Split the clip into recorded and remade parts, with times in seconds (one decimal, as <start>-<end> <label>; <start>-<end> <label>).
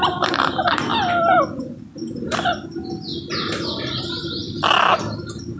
0.0-0.9 remade; 0.9-1.5 recorded; 1.5-5.6 remade